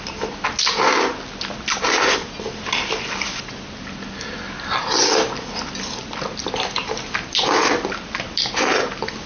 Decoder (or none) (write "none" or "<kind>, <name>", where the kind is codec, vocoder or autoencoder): none